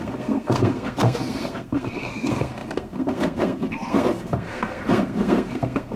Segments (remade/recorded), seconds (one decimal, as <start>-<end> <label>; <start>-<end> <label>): 0.0-6.0 remade